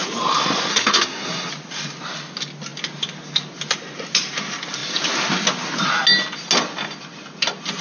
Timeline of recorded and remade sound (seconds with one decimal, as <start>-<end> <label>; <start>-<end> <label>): 0.0-0.7 recorded; 0.7-1.5 remade; 1.5-7.8 recorded